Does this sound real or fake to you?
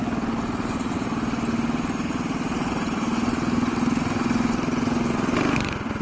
real